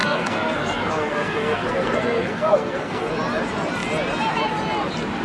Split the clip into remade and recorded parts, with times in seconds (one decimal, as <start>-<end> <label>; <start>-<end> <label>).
0.0-3.1 remade; 3.1-5.2 recorded